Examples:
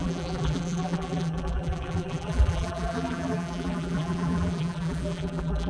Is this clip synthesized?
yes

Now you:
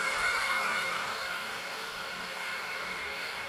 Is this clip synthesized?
yes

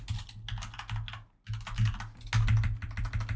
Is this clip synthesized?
no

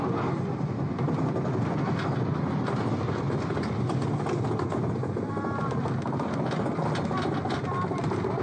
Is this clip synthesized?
no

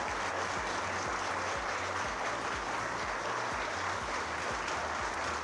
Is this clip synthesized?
no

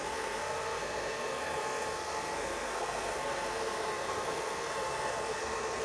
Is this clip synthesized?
yes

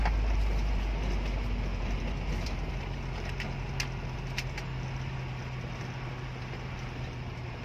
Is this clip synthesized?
no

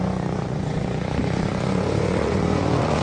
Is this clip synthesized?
yes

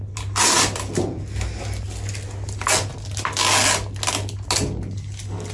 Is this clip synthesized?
no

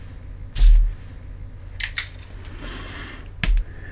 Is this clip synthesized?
no